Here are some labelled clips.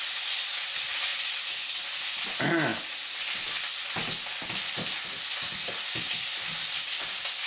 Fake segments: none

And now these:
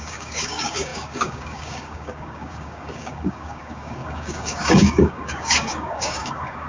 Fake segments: 0.0-6.7 (codec, DAC)

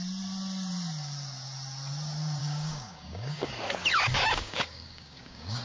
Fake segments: 2.4-3.5 (codec, DAC); 3.9-5.6

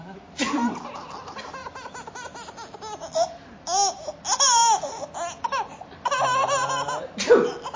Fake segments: none